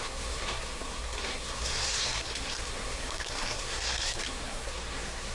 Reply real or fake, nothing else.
fake